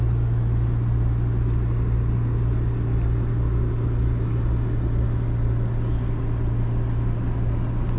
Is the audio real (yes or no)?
yes